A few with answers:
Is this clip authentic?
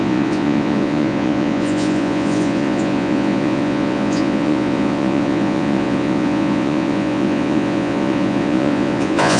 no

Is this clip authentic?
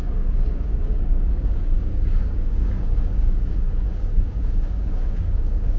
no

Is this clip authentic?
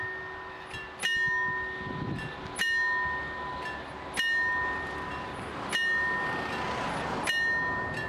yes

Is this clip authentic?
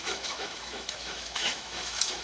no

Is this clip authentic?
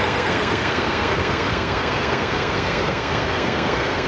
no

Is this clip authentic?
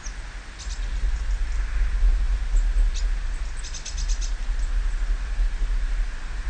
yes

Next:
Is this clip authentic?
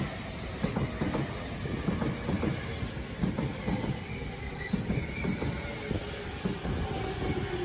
yes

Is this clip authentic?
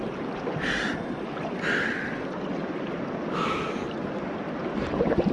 yes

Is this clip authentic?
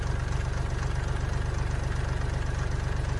yes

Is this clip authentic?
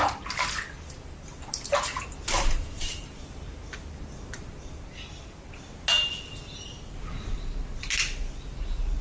yes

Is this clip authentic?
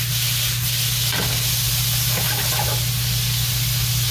yes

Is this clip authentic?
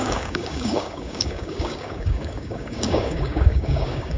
no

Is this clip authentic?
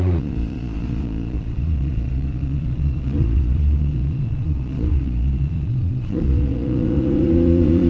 no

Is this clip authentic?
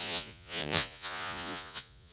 no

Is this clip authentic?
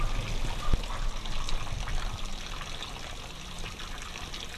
yes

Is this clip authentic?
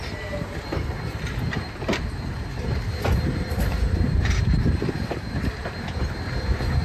no